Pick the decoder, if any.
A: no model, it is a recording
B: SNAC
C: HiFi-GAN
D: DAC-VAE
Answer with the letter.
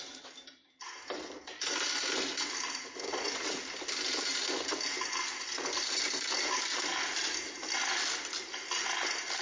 A